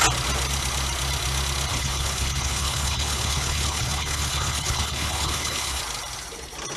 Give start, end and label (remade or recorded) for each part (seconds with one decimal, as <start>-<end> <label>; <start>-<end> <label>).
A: 0.0-1.7 recorded; 1.7-5.8 remade; 5.8-6.8 recorded